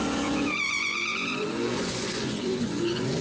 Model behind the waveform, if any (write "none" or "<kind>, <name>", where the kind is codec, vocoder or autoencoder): vocoder, Vocos